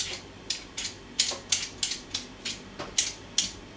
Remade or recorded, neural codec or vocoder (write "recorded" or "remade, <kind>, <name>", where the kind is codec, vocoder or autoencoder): recorded